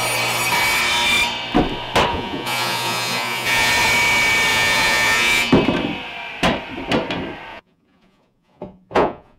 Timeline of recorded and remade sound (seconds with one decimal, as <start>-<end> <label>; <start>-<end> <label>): 0.0-2.1 recorded; 2.1-3.7 remade; 3.7-4.5 recorded; 4.5-5.5 remade; 5.5-7.5 recorded; 7.5-9.4 remade